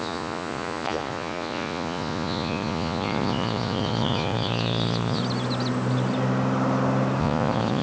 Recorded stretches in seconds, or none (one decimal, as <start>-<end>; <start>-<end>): 5.2-7.2